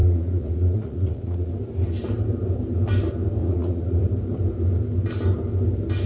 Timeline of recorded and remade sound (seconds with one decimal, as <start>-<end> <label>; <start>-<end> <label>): 0.0-1.5 remade; 1.5-3.4 recorded; 3.4-4.0 remade; 4.0-6.1 recorded